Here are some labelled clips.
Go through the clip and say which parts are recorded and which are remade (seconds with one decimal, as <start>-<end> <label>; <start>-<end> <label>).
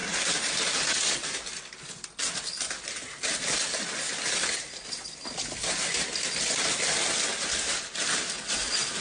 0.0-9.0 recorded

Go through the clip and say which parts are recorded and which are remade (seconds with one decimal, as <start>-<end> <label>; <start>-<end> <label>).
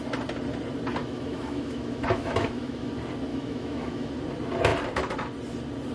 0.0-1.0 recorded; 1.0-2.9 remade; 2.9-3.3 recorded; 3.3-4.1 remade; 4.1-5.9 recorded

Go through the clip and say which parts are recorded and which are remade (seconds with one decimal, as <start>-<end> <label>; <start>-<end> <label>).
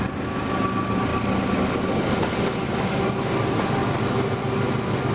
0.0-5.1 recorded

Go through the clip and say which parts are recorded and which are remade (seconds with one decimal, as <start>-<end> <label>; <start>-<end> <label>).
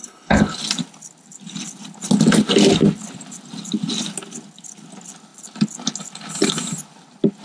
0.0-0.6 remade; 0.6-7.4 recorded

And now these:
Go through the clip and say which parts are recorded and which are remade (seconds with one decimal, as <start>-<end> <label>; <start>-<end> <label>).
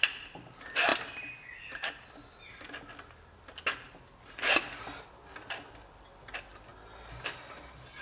0.0-8.0 recorded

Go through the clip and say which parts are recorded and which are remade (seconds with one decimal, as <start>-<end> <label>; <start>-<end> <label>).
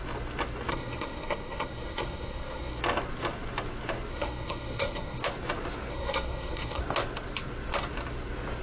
0.0-0.7 recorded; 0.7-2.8 remade; 2.8-4.1 recorded; 4.1-5.2 remade; 5.2-5.9 recorded; 5.9-6.8 remade; 6.8-8.6 recorded